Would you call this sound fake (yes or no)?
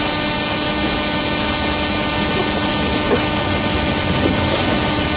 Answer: no